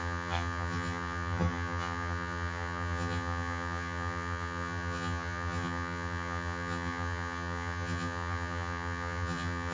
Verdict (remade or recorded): remade